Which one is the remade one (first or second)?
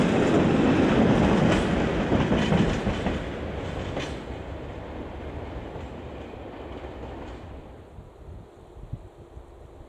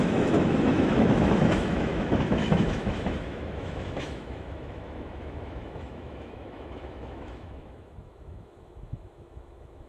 second